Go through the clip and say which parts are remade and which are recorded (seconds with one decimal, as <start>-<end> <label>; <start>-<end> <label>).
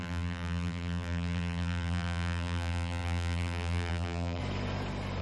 0.0-4.4 remade; 4.4-5.2 recorded